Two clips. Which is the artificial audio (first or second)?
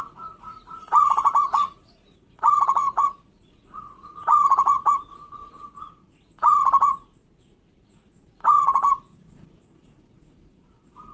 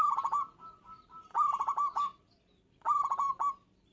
first